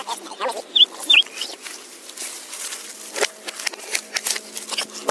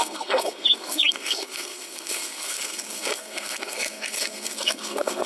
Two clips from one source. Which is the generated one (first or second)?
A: second